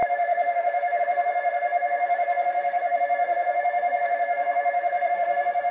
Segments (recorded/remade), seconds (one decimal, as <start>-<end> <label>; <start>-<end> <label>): 0.0-5.7 remade